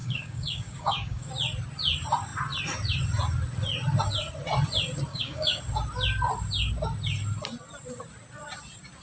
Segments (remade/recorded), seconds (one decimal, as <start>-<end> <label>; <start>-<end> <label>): 0.0-1.3 remade; 1.3-5.1 recorded; 5.1-5.6 remade; 5.6-9.0 recorded